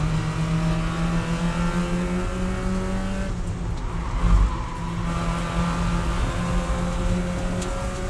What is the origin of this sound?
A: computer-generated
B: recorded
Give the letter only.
B